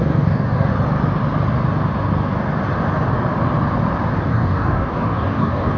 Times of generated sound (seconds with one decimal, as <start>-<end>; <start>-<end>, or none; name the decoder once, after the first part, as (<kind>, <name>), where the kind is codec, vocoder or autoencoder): 0.0-0.7 (codec, DAC); 4.2-5.8